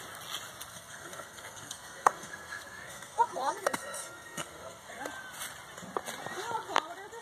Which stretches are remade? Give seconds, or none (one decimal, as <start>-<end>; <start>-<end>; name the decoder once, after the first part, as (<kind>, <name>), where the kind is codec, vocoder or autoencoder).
0.7-5.0 (codec, SNAC)